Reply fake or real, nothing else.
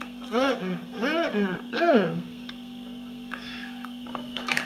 fake